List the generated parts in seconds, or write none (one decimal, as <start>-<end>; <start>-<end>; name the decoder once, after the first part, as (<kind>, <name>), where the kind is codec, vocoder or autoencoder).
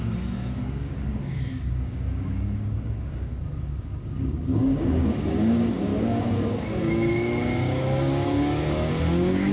0.0-9.5 (codec, DAC)